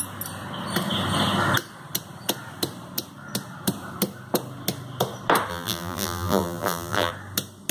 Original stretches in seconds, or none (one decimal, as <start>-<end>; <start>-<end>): 0.0-5.5; 7.1-7.7